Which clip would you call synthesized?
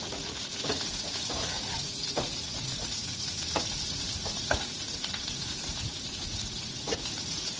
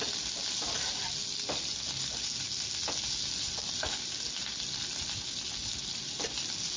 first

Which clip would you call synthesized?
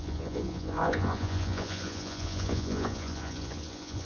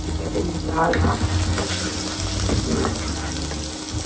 first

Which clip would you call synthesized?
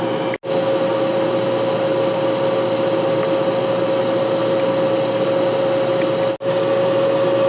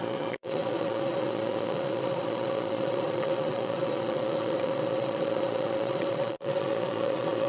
second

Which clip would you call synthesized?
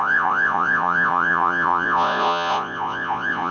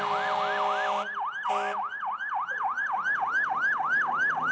first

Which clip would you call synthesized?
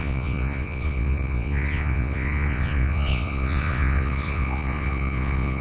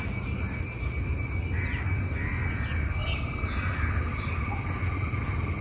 first